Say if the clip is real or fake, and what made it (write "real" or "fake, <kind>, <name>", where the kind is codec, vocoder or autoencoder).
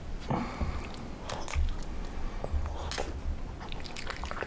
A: real